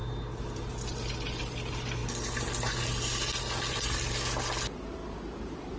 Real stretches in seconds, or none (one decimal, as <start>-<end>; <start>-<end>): 0.0-5.8